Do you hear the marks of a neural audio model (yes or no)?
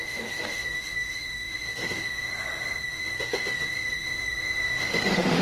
yes